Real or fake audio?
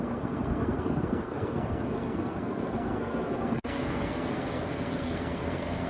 fake